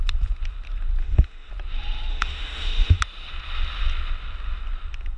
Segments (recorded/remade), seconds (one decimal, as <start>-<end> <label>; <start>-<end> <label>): 0.0-1.0 recorded; 1.0-1.5 remade; 1.5-2.1 recorded; 2.1-3.0 remade; 3.0-5.2 recorded